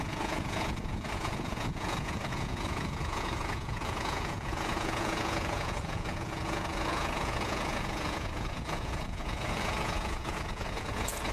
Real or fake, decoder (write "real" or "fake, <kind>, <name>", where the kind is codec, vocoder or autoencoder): fake, vocoder, Vocos